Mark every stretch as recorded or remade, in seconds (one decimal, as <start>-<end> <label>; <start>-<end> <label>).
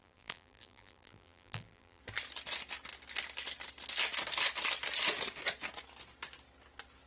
0.0-2.0 remade; 2.0-7.1 recorded